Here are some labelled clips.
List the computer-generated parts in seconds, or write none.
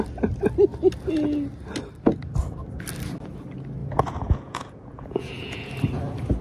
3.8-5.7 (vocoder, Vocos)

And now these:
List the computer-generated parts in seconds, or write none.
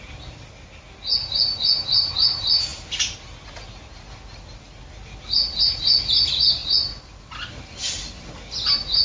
none